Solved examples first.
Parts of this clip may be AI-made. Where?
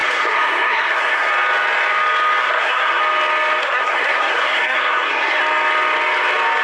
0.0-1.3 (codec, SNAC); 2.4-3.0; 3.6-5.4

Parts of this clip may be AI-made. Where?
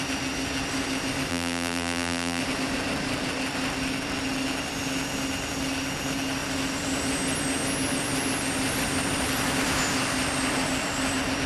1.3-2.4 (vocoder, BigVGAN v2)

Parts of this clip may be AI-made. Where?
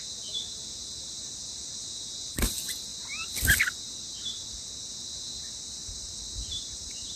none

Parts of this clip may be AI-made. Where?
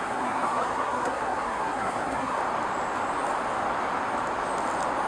0.0-2.4 (codec, SNAC)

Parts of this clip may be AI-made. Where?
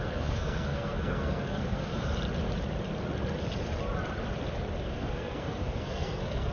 0.0-1.9 (codec, SNAC); 4.8-6.5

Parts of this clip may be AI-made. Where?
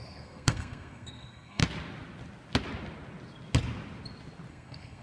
0.0-1.6 (codec, SNAC); 4.5-5.0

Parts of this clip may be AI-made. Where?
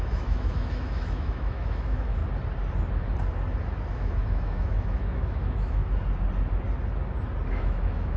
0.0-2.2 (autoencoder, DAC-VAE); 3.9-5.8; 7.5-8.2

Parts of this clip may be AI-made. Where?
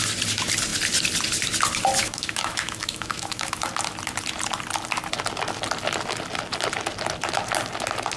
2.0-3.7 (autoencoder, DAC-VAE)